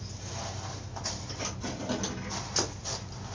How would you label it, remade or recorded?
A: recorded